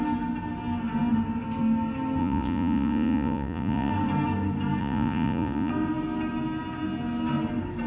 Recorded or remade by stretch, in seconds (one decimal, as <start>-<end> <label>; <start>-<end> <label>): 0.0-2.2 recorded; 2.2-3.9 remade; 3.9-4.8 recorded; 4.8-5.7 remade; 5.7-7.9 recorded